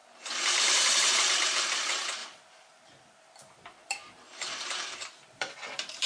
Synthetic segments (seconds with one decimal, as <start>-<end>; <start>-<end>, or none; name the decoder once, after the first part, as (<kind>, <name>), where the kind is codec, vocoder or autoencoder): 2.2-6.1 (vocoder, BigVGAN v2)